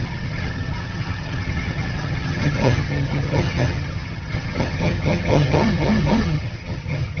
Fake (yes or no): yes